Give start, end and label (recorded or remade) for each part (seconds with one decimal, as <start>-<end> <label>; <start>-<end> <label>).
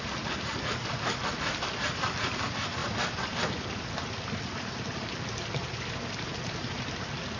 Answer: 0.0-2.8 recorded; 2.8-6.9 remade; 6.9-7.4 recorded